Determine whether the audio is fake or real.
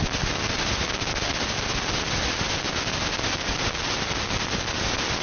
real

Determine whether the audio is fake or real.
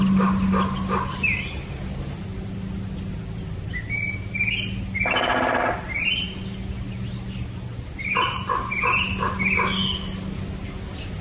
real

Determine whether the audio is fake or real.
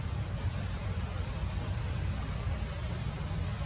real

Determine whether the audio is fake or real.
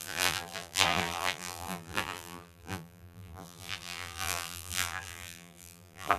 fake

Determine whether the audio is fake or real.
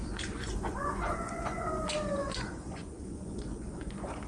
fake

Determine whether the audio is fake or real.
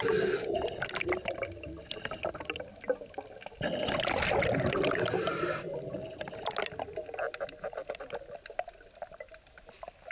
real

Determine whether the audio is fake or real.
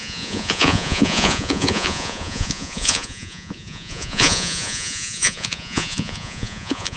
fake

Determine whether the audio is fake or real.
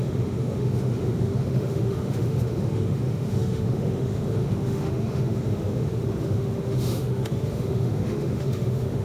fake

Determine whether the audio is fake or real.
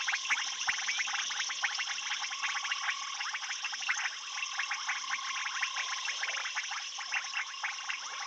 real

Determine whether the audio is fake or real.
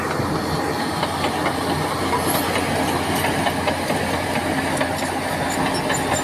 real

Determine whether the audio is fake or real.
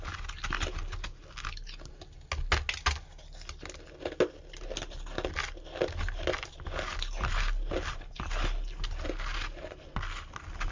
real